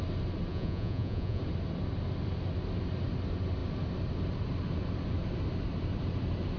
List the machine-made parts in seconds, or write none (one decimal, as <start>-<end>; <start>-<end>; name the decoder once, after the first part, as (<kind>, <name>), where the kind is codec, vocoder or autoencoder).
0.5-1.4 (vocoder, Vocos)